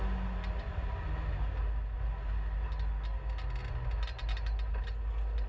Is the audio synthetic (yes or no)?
no